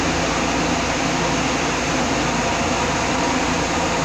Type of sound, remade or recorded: recorded